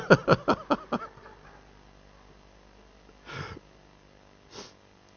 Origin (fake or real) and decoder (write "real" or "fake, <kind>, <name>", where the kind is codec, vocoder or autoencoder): real